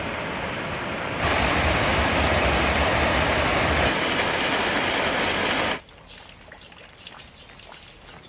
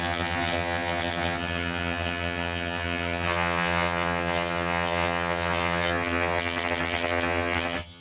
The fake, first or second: second